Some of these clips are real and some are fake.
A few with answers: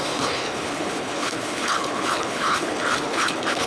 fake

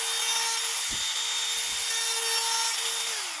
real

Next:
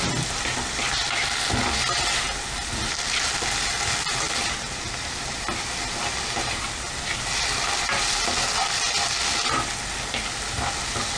real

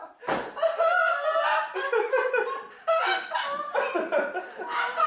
real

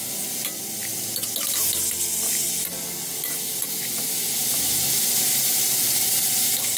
real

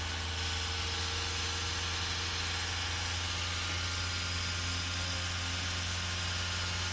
real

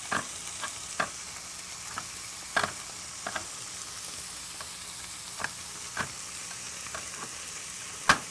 real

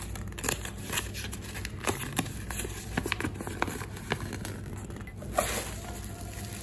real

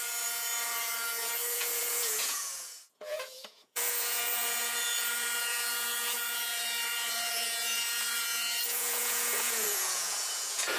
fake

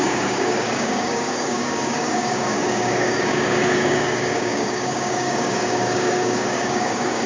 fake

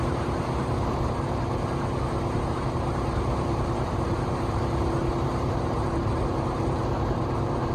fake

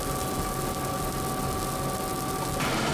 real